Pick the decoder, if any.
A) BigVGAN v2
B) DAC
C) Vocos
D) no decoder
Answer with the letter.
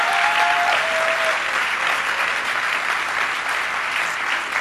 D